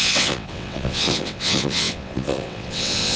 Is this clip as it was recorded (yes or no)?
no